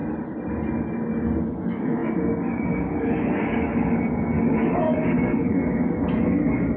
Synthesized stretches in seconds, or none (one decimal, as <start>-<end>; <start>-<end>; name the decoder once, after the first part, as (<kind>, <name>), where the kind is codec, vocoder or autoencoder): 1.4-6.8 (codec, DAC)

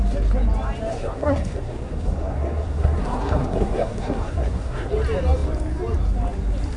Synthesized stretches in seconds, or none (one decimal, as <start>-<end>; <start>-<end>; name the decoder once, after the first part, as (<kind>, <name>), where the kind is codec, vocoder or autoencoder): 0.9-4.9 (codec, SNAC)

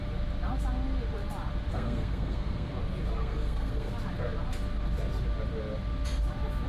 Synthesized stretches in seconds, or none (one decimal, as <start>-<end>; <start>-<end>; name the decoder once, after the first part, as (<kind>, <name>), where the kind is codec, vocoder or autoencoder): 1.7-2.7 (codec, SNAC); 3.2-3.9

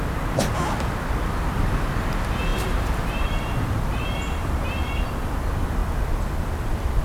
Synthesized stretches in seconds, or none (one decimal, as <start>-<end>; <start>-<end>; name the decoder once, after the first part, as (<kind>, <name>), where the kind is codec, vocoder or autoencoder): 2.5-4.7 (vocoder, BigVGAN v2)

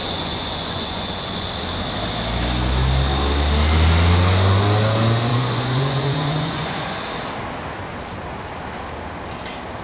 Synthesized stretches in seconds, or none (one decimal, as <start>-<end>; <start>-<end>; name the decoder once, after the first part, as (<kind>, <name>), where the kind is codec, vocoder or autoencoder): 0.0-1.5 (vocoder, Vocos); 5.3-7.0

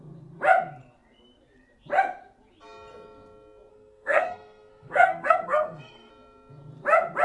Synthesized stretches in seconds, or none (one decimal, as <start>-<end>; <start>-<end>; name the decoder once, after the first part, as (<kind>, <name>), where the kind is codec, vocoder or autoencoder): 3.7-6.1 (codec, SNAC)

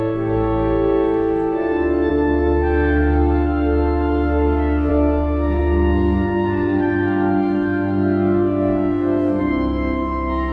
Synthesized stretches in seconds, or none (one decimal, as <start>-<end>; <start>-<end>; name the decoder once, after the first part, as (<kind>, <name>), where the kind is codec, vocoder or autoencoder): 2.1-4.9 (codec, SNAC); 5.6-9.4